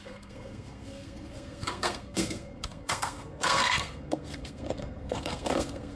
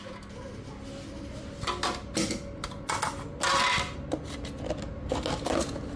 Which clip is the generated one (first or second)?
first